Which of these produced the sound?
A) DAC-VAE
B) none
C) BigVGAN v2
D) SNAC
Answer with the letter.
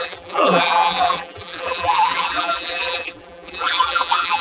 C